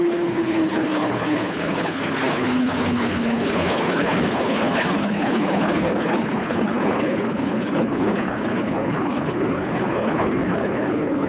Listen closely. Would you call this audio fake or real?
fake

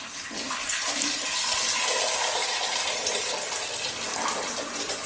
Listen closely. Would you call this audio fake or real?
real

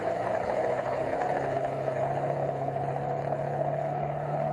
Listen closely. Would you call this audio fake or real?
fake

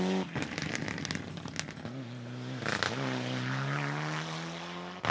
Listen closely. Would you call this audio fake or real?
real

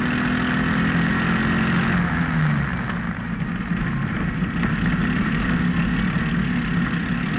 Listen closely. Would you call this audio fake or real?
real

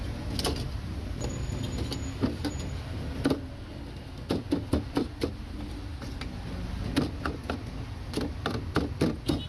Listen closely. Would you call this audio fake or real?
real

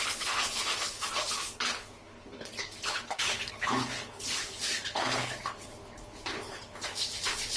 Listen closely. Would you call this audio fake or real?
fake